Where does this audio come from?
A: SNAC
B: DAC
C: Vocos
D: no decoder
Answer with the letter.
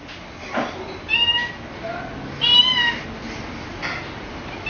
D